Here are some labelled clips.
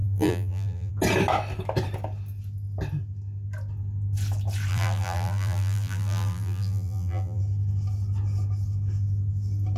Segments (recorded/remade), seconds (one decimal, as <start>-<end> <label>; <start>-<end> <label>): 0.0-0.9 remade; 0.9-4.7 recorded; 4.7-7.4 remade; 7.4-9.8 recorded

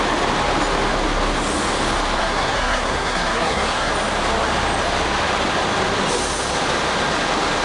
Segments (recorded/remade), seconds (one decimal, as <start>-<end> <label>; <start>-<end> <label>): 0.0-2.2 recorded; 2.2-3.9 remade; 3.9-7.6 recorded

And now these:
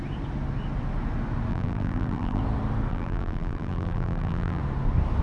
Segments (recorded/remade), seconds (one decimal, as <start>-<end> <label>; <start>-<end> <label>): 0.0-1.5 recorded; 1.5-2.4 remade; 2.4-2.9 recorded; 2.9-4.6 remade; 4.6-5.2 recorded